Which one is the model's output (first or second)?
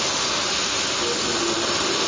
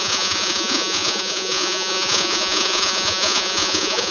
second